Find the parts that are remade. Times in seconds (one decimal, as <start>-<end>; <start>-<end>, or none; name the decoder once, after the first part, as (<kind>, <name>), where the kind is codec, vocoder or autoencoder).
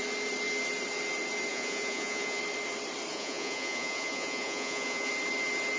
1.5-2.4 (vocoder, Vocos); 3.1-5.1